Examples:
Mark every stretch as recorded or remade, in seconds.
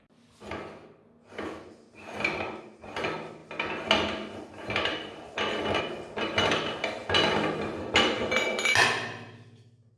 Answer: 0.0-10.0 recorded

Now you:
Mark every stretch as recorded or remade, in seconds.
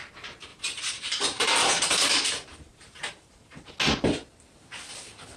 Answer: 0.0-0.5 recorded; 0.5-3.7 remade; 3.7-5.4 recorded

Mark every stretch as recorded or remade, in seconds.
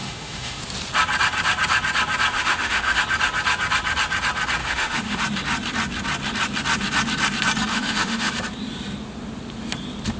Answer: 0.0-0.6 remade; 0.6-2.3 recorded; 2.3-3.0 remade; 3.0-4.6 recorded; 4.6-5.2 remade; 5.2-7.7 recorded; 7.7-8.3 remade; 8.3-10.2 recorded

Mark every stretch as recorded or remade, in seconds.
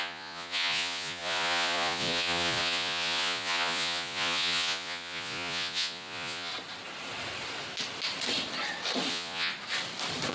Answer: 0.0-6.5 remade; 6.5-9.1 recorded; 9.1-9.5 remade; 9.5-10.3 recorded